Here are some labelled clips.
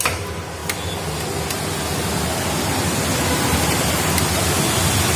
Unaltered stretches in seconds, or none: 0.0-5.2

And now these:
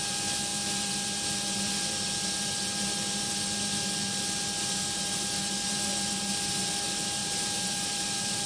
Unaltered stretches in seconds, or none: 0.0-7.2

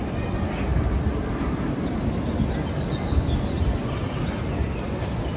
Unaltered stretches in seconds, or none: 0.0-5.4

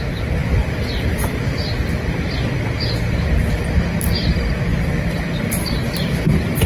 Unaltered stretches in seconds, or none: 0.0-0.4; 1.4-4.7; 6.1-6.7

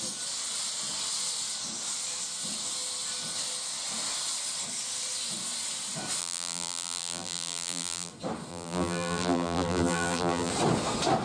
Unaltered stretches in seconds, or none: 0.0-6.2; 8.1-8.5; 10.5-11.2